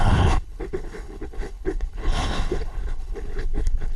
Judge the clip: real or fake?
fake